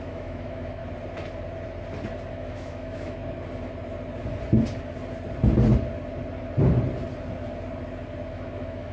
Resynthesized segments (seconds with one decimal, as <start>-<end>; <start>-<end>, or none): 0.0-0.8; 2.3-3.2; 8.3-8.9